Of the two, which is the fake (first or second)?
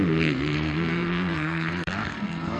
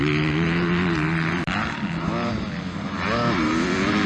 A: first